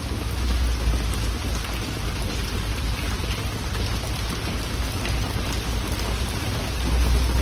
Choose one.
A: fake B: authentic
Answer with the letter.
B